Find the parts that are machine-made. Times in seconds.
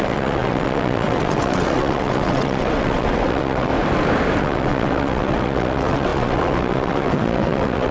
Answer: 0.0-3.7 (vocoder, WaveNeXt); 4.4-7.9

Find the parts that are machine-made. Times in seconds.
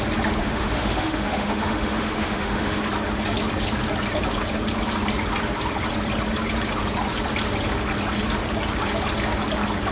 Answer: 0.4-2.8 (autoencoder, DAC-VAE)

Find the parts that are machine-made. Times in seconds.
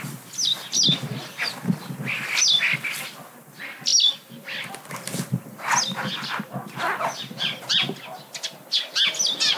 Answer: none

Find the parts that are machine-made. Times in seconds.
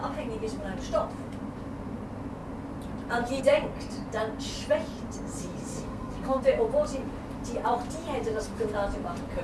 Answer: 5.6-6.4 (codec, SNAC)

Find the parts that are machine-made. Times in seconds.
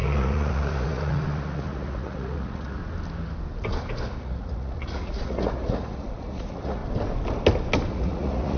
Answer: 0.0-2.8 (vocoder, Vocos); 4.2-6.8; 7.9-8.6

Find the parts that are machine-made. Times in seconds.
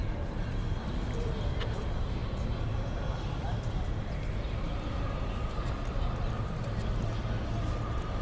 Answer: 0.0-1.5 (vocoder, BigVGAN v2)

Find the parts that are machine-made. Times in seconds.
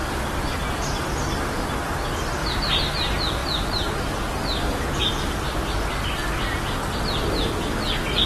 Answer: 2.4-2.9 (vocoder, BigVGAN v2)